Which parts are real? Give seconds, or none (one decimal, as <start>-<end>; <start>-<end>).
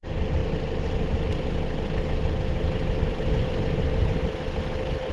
0.0-5.1